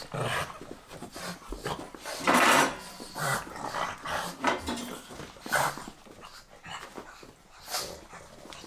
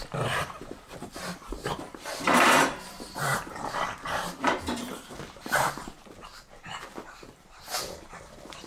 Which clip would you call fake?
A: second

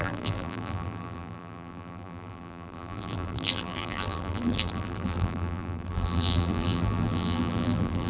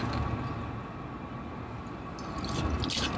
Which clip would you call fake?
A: first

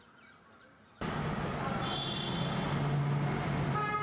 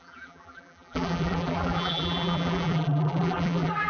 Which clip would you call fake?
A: second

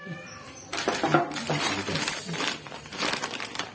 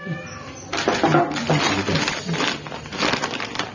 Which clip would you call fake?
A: first